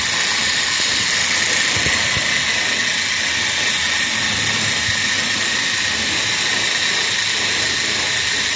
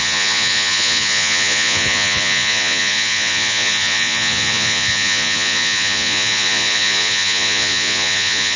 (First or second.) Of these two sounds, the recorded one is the first